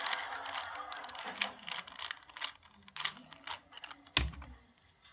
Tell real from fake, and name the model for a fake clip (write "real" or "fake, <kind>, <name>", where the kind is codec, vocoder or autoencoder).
real